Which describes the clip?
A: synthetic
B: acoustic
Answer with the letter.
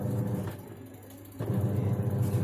B